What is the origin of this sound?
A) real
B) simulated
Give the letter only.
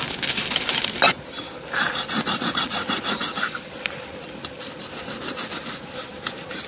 A